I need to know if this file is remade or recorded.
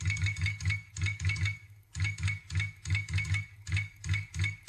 remade